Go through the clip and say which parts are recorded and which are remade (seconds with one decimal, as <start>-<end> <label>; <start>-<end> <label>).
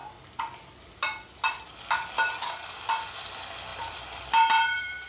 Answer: 0.0-3.7 recorded; 3.7-5.1 remade